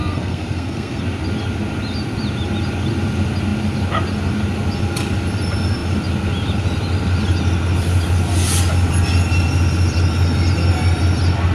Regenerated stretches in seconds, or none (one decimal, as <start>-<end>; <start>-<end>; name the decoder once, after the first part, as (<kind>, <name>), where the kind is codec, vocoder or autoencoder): 0.0-1.0 (codec, SNAC)